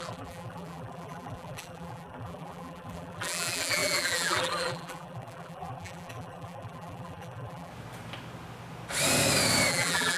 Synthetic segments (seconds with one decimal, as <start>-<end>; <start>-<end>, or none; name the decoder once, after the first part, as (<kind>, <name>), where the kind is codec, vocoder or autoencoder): 0.0-7.7 (vocoder, BigVGAN v2); 9.7-10.2